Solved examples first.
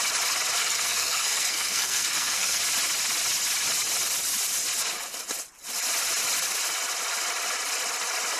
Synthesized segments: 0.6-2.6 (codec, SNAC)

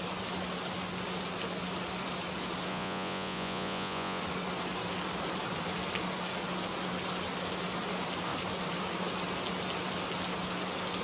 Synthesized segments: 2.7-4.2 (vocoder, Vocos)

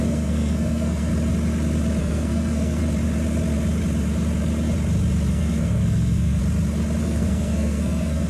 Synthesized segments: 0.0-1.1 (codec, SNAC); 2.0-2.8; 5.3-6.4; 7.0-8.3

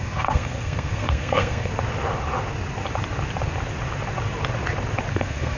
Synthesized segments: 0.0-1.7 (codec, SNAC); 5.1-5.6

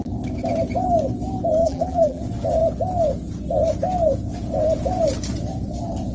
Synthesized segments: 1.6-2.2 (vocoder, BigVGAN v2)